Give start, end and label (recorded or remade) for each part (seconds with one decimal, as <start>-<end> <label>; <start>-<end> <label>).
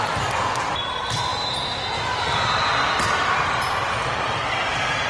0.0-5.1 recorded